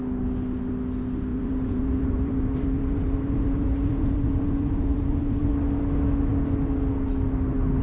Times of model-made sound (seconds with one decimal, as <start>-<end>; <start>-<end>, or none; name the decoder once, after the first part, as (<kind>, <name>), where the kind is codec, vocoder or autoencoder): 1.3-5.5 (vocoder, BigVGAN v2)